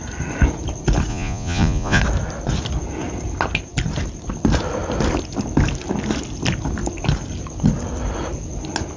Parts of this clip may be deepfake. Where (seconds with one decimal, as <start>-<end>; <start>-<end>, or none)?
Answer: 1.1-2.0